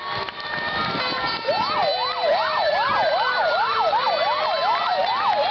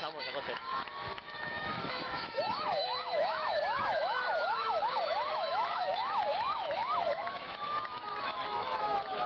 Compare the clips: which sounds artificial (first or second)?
second